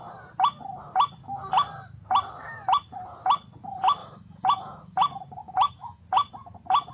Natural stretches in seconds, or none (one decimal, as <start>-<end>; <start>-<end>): 0.0-4.0; 4.8-5.4; 6.0-6.9